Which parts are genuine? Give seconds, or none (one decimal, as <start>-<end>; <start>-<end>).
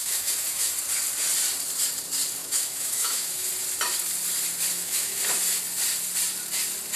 0.7-2.4; 3.5-4.7; 5.2-7.0